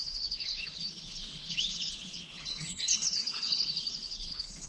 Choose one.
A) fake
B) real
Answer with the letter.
A